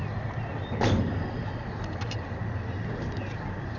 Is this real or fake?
real